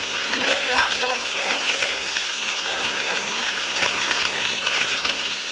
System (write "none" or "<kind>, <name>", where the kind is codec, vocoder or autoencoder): codec, SNAC